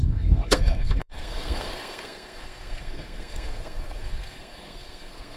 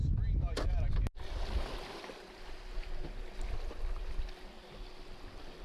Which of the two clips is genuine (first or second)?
second